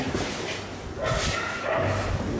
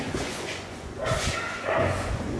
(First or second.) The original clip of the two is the first